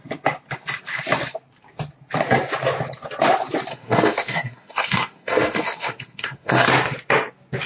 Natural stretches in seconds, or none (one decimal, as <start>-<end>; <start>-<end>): 0.0-3.7; 6.7-7.7